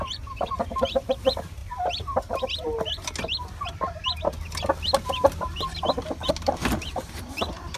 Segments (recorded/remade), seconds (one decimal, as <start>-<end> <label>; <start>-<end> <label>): 0.0-1.6 remade; 1.6-6.3 recorded; 6.3-7.8 remade